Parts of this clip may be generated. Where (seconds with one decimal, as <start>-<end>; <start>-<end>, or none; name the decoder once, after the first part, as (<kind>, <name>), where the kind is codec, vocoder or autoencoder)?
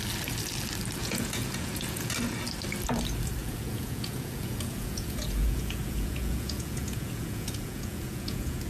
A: 1.0-2.1 (vocoder, Vocos); 3.4-8.7